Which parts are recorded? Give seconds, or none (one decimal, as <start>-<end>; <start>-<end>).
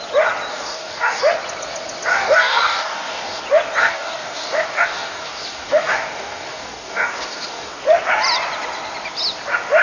0.0-0.5; 1.2-2.1; 3.4-3.8; 7.7-9.8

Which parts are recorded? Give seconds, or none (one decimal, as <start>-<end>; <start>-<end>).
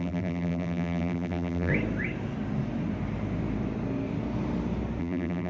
1.7-5.0